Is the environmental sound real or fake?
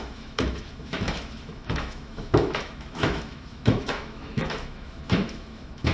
fake